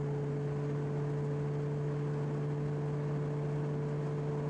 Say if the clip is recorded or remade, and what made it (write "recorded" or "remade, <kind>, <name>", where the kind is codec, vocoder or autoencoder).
recorded